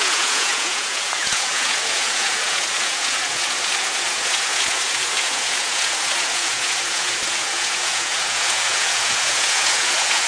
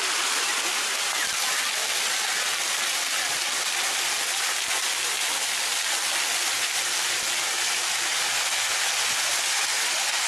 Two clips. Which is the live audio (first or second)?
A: second